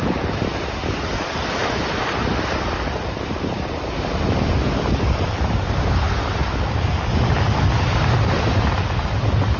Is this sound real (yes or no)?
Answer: yes